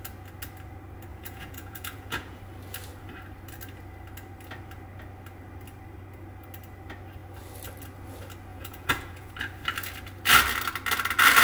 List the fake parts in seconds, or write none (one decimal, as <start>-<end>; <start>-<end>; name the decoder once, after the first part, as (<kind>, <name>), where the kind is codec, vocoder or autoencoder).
1.1-2.4 (vocoder, Vocos); 8.5-9.3